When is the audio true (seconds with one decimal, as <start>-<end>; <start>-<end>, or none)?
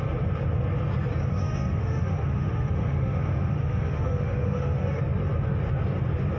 0.0-1.3; 5.0-6.4